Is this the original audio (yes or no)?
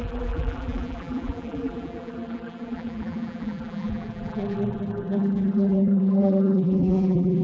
no